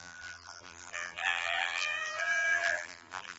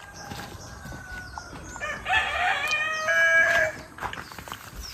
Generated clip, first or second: first